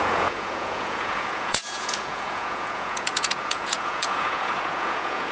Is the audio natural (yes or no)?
no